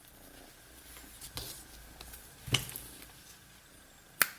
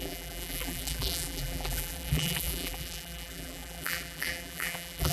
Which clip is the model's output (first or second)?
second